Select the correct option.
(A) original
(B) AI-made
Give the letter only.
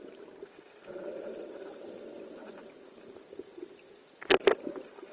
A